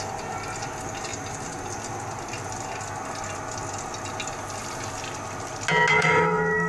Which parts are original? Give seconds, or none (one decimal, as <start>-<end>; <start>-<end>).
0.0-5.9

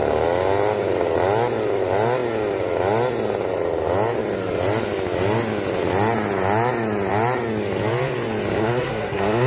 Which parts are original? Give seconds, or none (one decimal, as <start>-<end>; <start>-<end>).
0.0-8.6